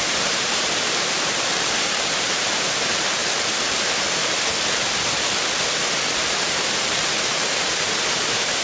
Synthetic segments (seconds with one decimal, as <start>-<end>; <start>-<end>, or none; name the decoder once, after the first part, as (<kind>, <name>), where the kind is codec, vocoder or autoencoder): 0.0-3.2 (vocoder, BigVGAN v2); 6.4-8.6